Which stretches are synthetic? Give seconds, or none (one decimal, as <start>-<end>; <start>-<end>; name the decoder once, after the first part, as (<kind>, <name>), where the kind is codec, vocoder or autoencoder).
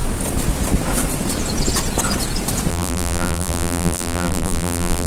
2.7-5.1 (vocoder, BigVGAN v2)